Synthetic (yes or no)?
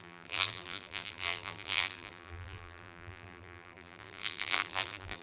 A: yes